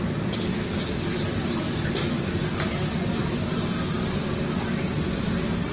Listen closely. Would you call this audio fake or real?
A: real